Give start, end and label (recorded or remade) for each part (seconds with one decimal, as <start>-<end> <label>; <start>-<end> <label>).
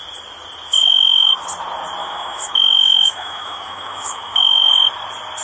0.0-0.8 recorded; 0.8-1.3 remade; 1.3-2.0 recorded; 2.0-4.7 remade; 4.7-5.4 recorded